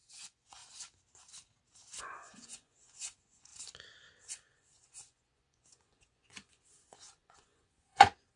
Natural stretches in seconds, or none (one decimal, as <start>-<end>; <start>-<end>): 0.6-2.0; 3.5-4.3